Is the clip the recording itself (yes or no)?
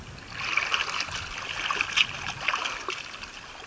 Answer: yes